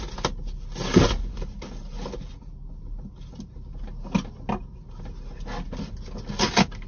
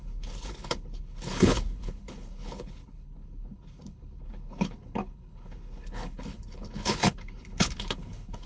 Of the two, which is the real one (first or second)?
first